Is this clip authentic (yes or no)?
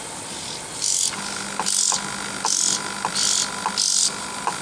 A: yes